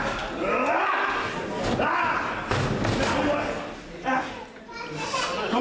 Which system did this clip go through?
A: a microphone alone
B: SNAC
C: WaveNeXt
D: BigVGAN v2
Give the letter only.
A